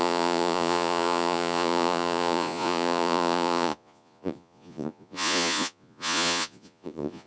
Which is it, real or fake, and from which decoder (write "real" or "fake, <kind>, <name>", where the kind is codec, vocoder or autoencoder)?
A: fake, vocoder, Vocos